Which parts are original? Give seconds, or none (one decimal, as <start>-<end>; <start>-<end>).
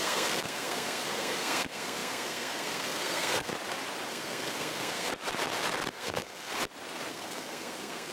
3.5-4.1; 5.1-5.9; 6.5-7.1